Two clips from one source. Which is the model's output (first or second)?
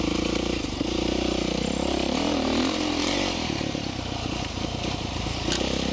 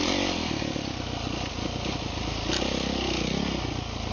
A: first